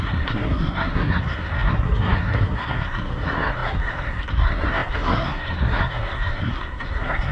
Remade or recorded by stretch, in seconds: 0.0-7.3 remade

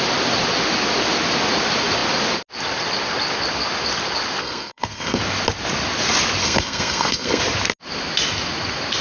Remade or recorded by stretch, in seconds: 0.0-4.4 recorded; 4.4-5.2 remade; 5.2-6.4 recorded; 6.4-7.4 remade; 7.4-9.0 recorded

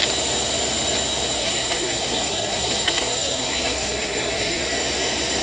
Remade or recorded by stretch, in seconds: 0.0-1.4 recorded; 1.4-4.6 remade; 4.6-5.4 recorded

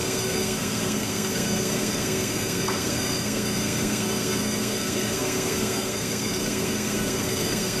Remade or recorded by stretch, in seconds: 0.0-7.8 remade

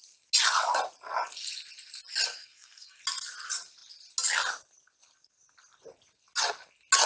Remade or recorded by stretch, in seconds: 0.0-2.3 recorded; 2.3-3.0 remade; 3.0-7.1 recorded

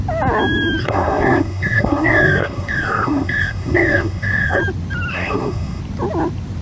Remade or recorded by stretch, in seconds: 0.0-0.8 recorded; 0.8-4.6 remade; 4.6-5.1 recorded; 5.1-5.8 remade; 5.8-6.6 recorded

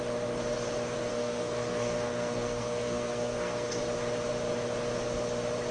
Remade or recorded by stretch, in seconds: 0.0-1.1 recorded; 1.1-3.8 remade; 3.8-5.7 recorded

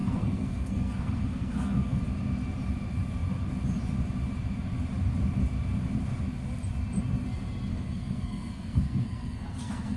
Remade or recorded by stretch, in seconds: 0.0-2.0 remade; 2.0-7.7 recorded; 7.7-10.0 remade